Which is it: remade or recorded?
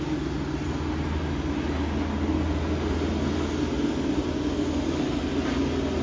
recorded